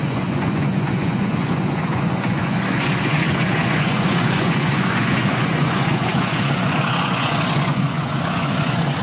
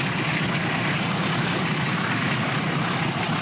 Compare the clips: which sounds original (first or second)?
second